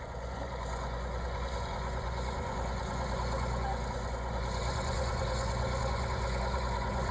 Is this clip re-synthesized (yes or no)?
yes